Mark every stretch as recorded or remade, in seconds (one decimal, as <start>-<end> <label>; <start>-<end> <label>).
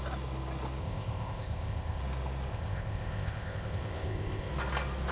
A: 0.0-0.8 recorded; 0.8-2.0 remade; 2.0-2.5 recorded; 2.5-4.5 remade; 4.5-5.1 recorded